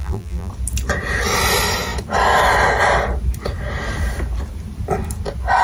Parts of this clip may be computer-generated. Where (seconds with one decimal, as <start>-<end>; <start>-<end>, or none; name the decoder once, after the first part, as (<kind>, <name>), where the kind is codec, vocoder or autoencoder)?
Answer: 0.0-0.5 (vocoder, BigVGAN v2)